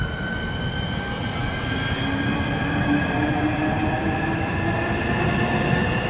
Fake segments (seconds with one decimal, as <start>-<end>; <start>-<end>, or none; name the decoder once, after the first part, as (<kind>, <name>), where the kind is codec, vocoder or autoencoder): none